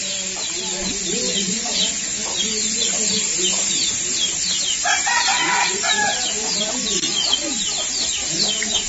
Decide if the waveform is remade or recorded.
recorded